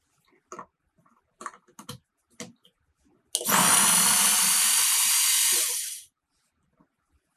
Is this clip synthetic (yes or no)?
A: no